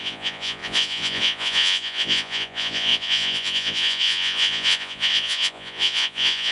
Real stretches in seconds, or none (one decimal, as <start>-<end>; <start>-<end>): none